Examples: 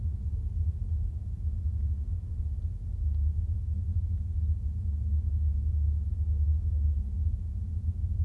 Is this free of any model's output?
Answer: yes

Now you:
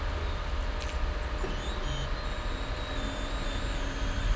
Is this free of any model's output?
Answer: yes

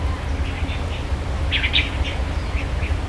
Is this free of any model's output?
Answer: yes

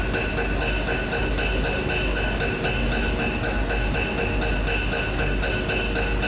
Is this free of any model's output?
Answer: yes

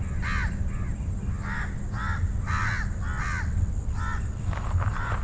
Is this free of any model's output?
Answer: yes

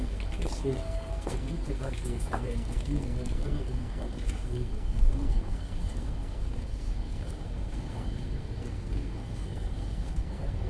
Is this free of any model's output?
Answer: no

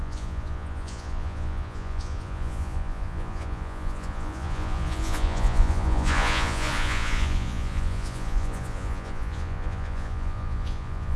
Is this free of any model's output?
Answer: no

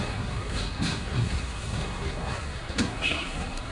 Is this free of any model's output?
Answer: no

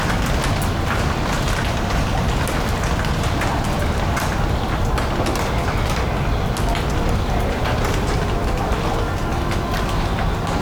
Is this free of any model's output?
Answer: yes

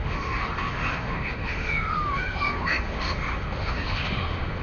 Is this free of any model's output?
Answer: no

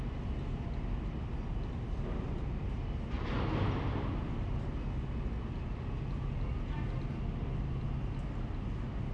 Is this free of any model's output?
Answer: yes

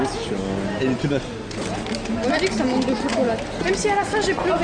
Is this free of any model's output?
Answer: yes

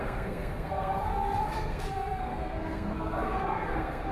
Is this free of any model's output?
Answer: no